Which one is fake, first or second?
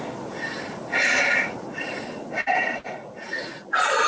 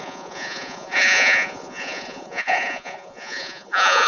second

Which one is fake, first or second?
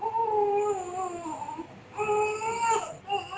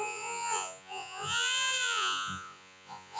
second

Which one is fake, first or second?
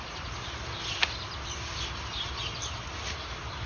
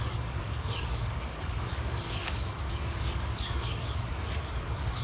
second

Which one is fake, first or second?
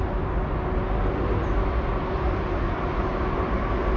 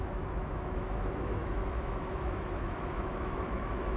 second